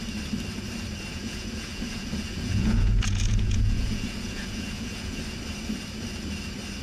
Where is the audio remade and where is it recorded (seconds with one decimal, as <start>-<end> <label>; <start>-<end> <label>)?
0.0-1.1 recorded; 1.1-5.2 remade; 5.2-6.8 recorded